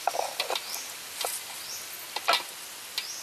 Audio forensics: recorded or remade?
recorded